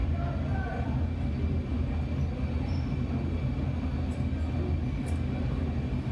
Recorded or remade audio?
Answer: recorded